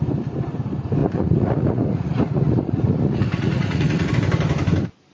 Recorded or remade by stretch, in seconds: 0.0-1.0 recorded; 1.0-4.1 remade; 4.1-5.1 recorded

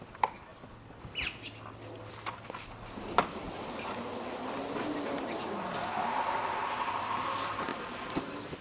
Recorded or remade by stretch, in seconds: 0.0-8.6 recorded

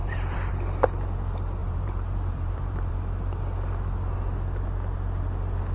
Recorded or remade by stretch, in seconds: 0.0-0.5 remade; 0.5-1.6 recorded; 1.6-2.9 remade; 2.9-5.7 recorded

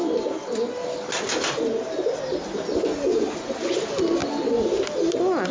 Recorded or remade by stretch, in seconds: 0.0-5.5 recorded

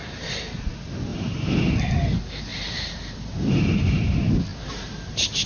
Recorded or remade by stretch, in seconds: 0.0-1.1 recorded; 1.1-1.7 remade; 1.7-2.5 recorded; 2.5-4.0 remade; 4.0-4.5 recorded; 4.5-5.5 remade

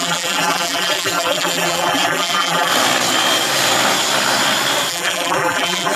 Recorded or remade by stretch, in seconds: 0.0-2.7 remade; 2.7-4.9 recorded; 4.9-6.0 remade